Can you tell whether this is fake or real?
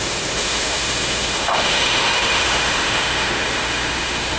fake